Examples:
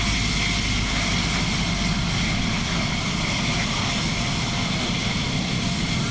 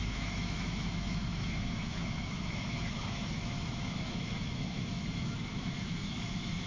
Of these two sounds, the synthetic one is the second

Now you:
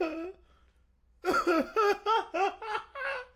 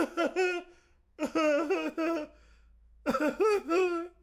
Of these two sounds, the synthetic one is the second